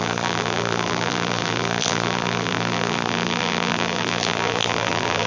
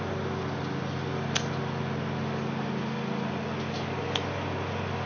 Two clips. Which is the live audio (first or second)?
second